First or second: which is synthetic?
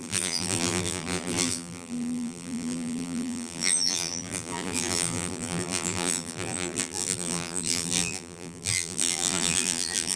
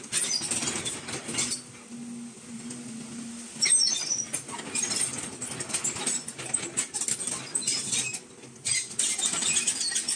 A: first